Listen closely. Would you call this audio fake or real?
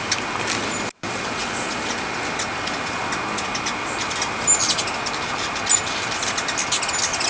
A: real